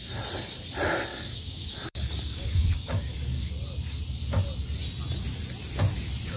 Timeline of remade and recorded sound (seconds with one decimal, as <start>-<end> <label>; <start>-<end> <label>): 0.0-1.1 recorded; 1.1-3.5 remade; 3.5-6.4 recorded